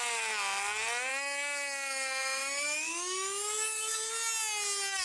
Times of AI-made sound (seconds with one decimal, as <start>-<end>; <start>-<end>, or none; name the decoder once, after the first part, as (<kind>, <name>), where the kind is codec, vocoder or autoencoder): 1.1-4.1 (autoencoder, DAC-VAE)